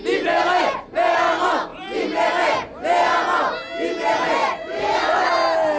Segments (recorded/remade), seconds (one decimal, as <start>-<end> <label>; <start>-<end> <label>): 0.0-4.4 recorded; 4.4-5.3 remade; 5.3-5.8 recorded

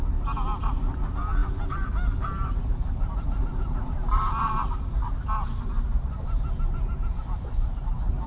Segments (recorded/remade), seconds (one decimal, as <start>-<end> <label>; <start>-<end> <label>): 0.0-8.3 recorded

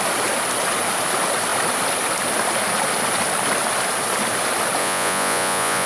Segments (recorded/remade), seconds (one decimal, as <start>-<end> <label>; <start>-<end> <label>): 0.0-4.8 recorded; 4.8-5.9 remade

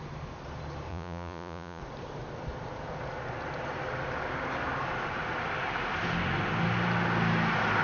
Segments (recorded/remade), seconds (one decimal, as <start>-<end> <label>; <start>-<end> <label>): 0.0-0.9 recorded; 0.9-1.8 remade; 1.8-7.8 recorded

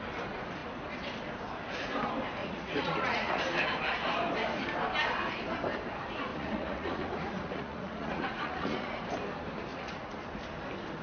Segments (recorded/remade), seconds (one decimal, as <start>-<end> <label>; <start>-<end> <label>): 0.0-2.4 recorded; 2.4-3.4 remade; 3.4-6.3 recorded; 6.3-9.0 remade; 9.0-9.7 recorded; 9.7-10.2 remade; 10.2-11.0 recorded

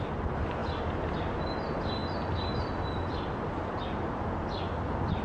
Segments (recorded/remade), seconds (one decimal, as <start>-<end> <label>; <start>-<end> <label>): 0.0-5.2 recorded